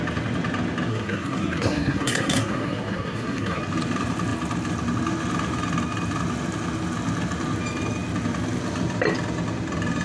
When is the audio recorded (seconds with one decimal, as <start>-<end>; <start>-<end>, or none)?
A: 0.0-0.9; 3.6-10.0